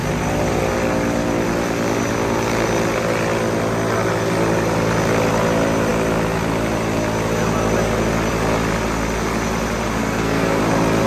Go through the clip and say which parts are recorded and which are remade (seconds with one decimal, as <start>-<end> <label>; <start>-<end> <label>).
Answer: 0.0-10.0 recorded; 10.0-10.6 remade; 10.6-11.1 recorded